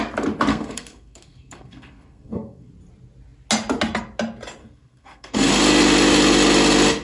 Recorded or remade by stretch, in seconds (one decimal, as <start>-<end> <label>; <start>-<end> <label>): 0.0-0.5 recorded; 0.5-2.7 remade; 2.7-4.6 recorded; 4.6-5.5 remade; 5.5-7.0 recorded